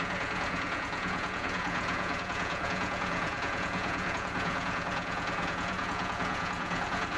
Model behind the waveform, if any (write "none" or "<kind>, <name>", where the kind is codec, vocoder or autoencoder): vocoder, Vocos